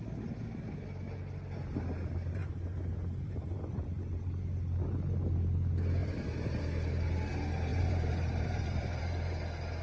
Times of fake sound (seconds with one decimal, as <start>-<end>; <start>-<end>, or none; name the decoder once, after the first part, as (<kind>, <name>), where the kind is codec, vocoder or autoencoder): 2.4-3.6 (vocoder, BigVGAN v2); 6.0-6.6; 7.7-9.0